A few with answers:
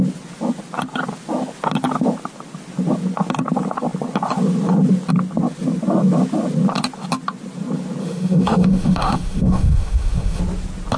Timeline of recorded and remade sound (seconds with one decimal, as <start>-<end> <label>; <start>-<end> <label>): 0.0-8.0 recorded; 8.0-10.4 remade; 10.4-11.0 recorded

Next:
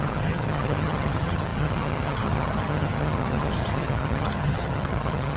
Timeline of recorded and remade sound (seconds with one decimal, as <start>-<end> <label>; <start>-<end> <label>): 0.0-5.4 remade

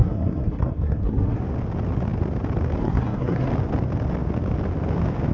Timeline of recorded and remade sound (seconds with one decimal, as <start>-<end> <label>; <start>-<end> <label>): 0.0-1.4 remade; 1.4-2.8 recorded; 2.8-3.5 remade; 3.5-5.3 recorded

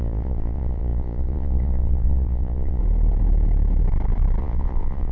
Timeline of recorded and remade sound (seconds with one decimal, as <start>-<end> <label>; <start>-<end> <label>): 0.0-2.8 remade; 2.8-4.4 recorded; 4.4-5.1 remade

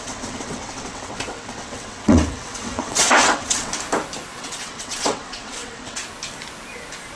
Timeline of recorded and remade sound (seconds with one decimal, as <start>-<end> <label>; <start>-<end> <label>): 0.0-3.7 remade; 3.7-4.4 recorded; 4.4-6.0 remade; 6.0-7.2 recorded

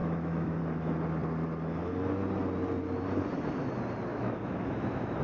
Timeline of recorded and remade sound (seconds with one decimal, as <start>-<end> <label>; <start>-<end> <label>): 0.0-0.6 remade; 0.6-4.1 recorded; 4.1-5.2 remade

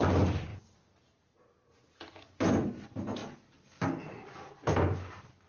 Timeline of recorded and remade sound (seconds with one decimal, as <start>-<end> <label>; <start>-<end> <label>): 0.0-5.5 recorded

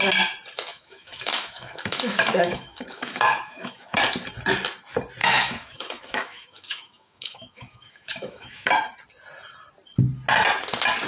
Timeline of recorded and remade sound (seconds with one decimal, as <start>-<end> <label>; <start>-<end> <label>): 0.0-0.7 recorded; 0.7-4.0 remade; 4.0-5.2 recorded; 5.2-8.7 remade; 8.7-11.1 recorded